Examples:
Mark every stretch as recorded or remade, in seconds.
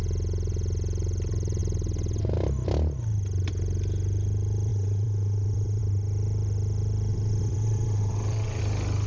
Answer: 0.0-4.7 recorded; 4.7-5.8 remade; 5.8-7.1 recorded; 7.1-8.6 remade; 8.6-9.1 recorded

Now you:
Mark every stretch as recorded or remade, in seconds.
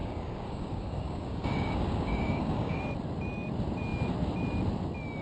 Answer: 0.0-2.8 remade; 2.8-5.2 recorded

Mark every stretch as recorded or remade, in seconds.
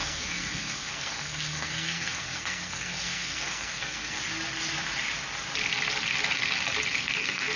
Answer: 0.0-4.2 remade; 4.2-7.0 recorded; 7.0-7.6 remade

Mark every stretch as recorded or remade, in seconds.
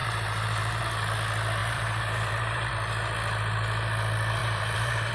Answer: 0.0-0.8 remade; 0.8-1.6 recorded; 1.6-2.7 remade; 2.7-4.4 recorded; 4.4-5.1 remade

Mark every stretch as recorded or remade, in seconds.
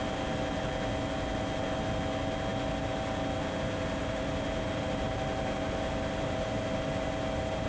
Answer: 0.0-7.7 recorded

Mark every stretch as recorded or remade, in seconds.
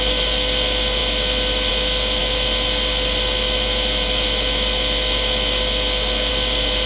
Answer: 0.0-6.9 recorded